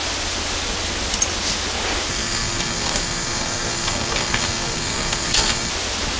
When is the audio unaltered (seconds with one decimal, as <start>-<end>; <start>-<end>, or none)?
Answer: 0.0-2.1; 5.7-6.2